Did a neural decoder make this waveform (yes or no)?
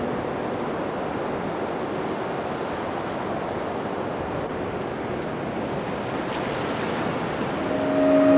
no